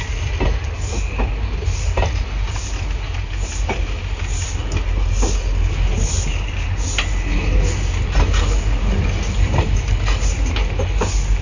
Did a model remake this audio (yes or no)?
no